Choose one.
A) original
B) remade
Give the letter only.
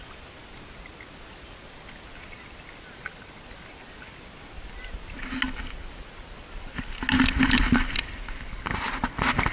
A